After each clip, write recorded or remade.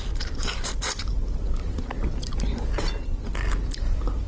recorded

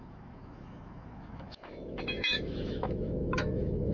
remade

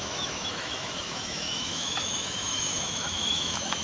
remade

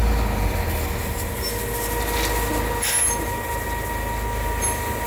recorded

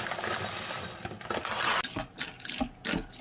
recorded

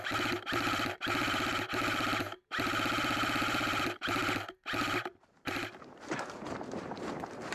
remade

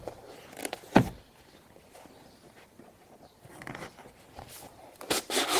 recorded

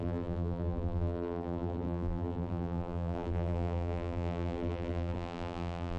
remade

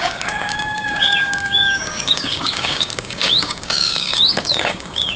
remade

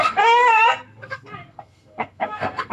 remade